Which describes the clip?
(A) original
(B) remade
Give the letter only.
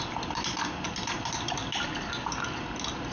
A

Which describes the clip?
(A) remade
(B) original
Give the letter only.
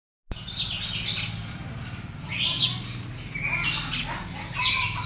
B